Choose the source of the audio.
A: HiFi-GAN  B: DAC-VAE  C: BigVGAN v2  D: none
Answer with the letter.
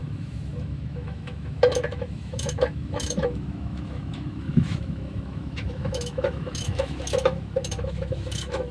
B